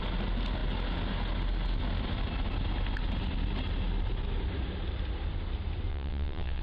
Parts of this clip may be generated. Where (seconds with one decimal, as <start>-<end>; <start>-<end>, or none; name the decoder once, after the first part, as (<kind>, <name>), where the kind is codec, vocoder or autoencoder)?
5.9-6.6 (vocoder, WaveNeXt)